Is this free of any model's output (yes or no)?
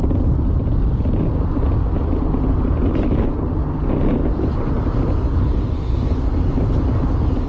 yes